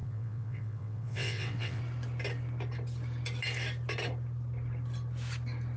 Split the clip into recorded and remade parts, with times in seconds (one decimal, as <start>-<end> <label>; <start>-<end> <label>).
0.0-1.8 remade; 1.8-5.8 recorded